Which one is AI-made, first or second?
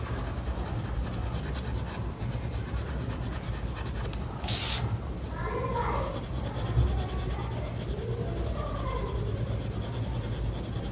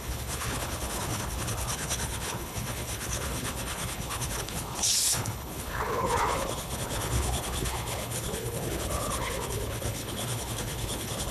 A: second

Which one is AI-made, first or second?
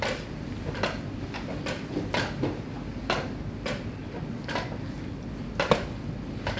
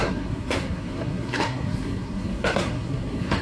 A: second